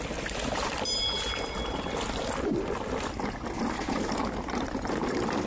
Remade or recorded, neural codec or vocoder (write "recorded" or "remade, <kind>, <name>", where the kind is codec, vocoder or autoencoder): recorded